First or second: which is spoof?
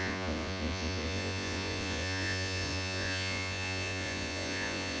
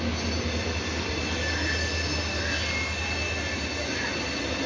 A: first